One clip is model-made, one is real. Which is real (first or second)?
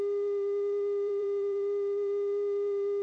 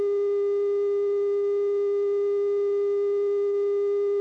second